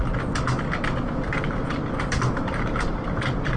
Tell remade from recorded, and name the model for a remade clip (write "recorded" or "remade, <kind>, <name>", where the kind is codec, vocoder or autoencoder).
recorded